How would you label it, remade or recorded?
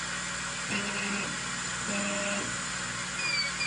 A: recorded